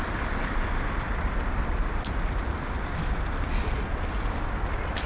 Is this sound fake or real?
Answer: fake